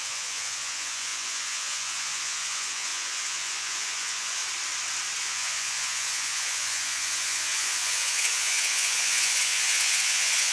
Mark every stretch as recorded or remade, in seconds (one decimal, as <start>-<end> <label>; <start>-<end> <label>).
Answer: 0.0-4.4 remade; 4.4-5.2 recorded; 5.2-10.5 remade